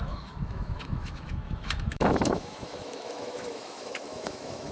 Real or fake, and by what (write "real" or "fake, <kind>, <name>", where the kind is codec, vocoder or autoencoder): fake, autoencoder, DAC-VAE